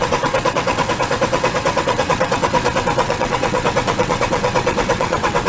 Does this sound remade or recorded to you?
remade